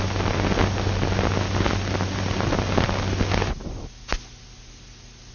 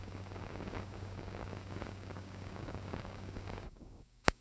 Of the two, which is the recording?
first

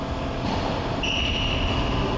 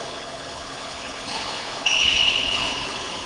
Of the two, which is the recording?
first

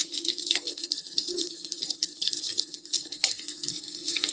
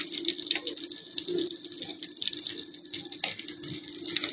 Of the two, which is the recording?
second